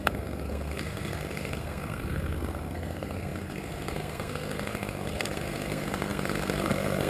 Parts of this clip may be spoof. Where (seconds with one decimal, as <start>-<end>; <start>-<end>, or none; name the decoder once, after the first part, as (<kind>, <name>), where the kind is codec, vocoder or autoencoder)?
0.0-7.1 (codec, SNAC)